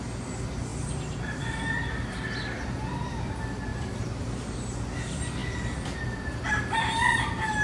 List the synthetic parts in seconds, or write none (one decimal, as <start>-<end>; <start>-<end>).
0.7-3.1; 3.7-4.4; 5.4-6.5